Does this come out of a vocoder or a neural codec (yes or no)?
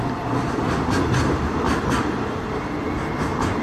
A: no